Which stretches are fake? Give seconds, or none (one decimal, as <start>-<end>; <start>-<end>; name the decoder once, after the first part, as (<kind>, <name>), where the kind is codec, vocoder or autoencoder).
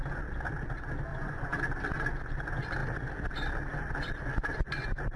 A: 1.1-1.6 (vocoder, Vocos)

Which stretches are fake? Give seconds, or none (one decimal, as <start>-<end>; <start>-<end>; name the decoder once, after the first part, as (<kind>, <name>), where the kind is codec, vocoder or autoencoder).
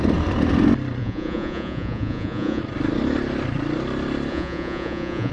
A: 1.0-2.6 (vocoder, Vocos); 4.3-5.3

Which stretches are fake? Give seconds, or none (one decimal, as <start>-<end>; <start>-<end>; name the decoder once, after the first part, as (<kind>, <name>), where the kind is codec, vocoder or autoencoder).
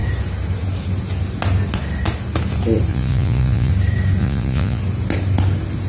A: 2.9-3.7 (vocoder, Vocos); 4.2-4.8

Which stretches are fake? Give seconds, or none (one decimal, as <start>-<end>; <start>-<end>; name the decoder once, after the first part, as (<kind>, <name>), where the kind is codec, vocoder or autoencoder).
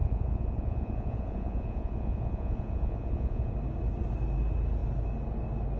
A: 0.0-3.5 (vocoder, Vocos)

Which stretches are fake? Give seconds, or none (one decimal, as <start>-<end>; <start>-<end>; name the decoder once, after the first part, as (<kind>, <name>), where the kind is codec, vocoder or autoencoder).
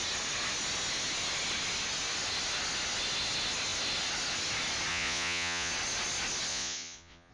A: 4.9-5.7 (vocoder, Vocos); 6.5-7.3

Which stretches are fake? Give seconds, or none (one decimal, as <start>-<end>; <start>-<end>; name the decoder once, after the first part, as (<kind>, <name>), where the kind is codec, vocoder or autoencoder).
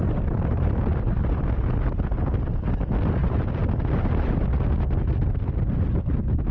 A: none